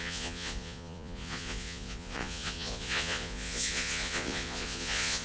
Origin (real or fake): fake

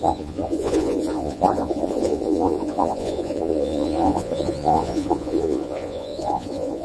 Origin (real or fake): fake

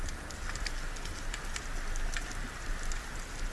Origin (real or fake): real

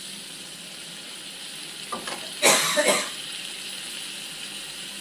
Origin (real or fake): real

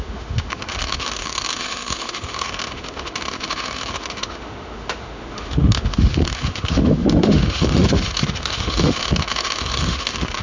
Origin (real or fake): fake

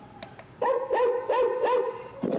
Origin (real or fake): real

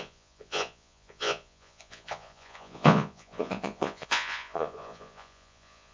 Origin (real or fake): fake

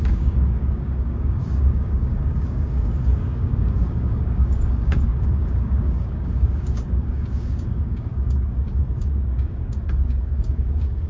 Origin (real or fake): fake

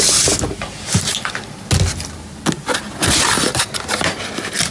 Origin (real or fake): real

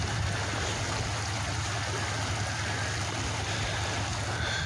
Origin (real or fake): real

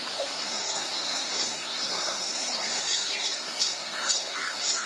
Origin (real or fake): fake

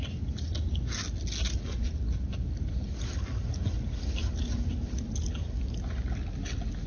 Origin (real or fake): real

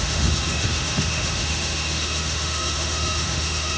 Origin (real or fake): fake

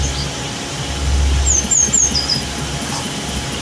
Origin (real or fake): fake